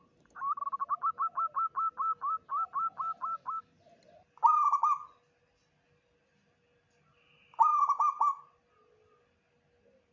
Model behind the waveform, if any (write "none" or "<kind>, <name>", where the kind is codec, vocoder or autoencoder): none